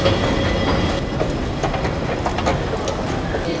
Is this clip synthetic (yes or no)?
no